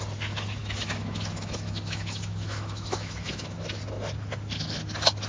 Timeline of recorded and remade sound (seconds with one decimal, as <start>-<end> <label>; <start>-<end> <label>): 0.0-0.6 recorded; 0.6-3.8 remade; 3.8-5.3 recorded